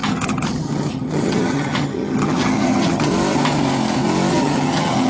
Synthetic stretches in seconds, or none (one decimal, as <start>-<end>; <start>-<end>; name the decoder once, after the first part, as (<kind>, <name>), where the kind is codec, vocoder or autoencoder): 0.0-3.1 (vocoder, HiFi-GAN); 4.3-5.1